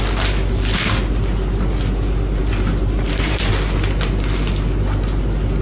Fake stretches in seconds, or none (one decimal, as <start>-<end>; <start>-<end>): 2.4-3.5